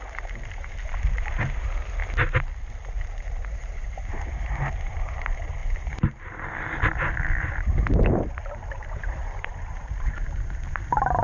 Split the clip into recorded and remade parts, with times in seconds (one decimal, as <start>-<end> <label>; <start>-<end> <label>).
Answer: 0.0-2.0 remade; 2.0-2.7 recorded; 2.7-11.2 remade